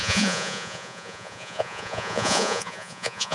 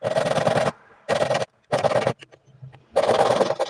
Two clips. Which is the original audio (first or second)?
second